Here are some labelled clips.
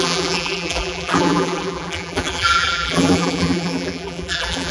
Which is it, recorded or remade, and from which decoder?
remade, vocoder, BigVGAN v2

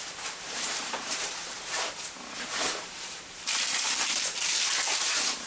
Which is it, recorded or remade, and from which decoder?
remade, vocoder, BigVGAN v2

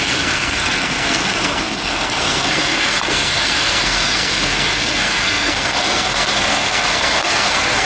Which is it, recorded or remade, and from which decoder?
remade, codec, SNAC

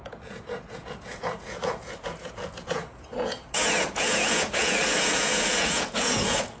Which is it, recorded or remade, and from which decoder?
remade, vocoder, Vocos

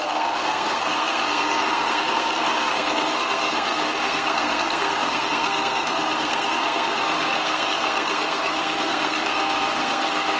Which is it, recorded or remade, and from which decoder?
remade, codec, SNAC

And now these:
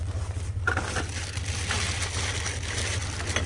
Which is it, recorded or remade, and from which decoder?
recorded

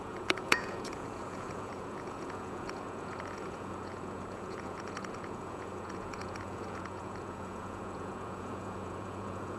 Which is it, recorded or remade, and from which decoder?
remade, vocoder, Vocos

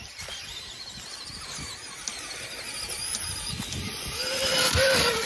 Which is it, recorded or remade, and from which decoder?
recorded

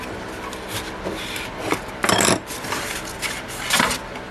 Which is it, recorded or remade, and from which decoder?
recorded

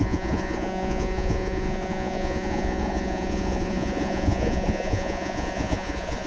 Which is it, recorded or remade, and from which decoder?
remade, vocoder, Vocos